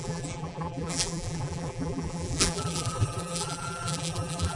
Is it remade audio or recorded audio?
remade